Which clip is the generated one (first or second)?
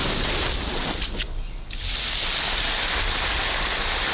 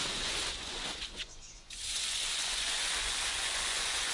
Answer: second